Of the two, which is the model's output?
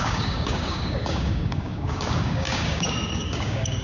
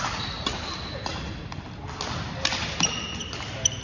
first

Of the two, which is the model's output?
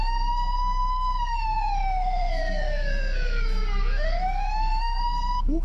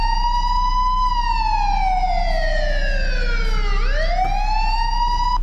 first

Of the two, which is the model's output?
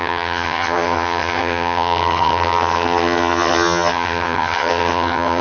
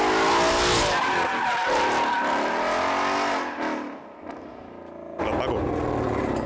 first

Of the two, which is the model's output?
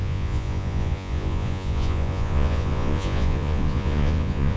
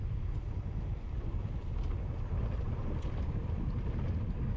first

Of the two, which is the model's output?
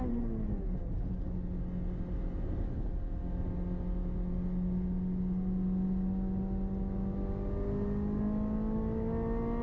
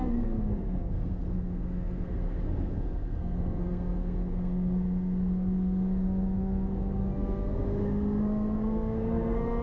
second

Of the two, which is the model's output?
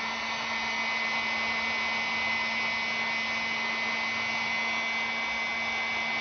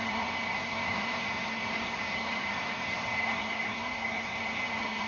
second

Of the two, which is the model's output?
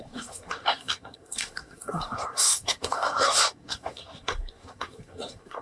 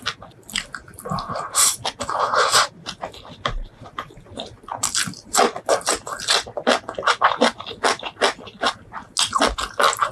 first